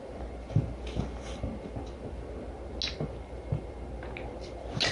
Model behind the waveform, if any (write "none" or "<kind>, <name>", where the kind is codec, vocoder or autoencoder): none